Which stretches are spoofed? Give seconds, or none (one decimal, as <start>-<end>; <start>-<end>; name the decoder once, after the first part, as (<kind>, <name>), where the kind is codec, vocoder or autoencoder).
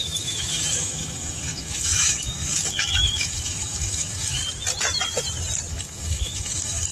0.0-4.4 (autoencoder, DAC-VAE); 5.7-6.9